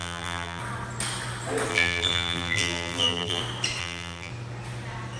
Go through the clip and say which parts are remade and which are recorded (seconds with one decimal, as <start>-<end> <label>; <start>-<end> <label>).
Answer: 0.0-0.6 remade; 0.6-1.7 recorded; 1.7-3.4 remade; 3.4-3.8 recorded; 3.8-4.3 remade; 4.3-5.2 recorded